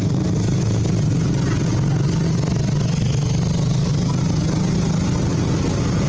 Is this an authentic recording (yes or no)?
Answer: yes